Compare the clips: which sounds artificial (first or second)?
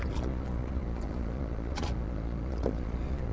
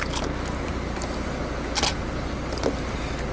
first